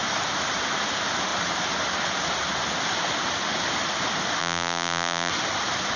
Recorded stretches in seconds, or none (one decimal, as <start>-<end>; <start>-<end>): 0.0-4.4; 5.3-6.0